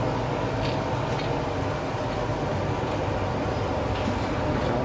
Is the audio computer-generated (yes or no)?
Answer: no